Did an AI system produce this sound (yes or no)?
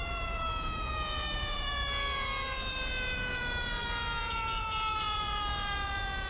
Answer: yes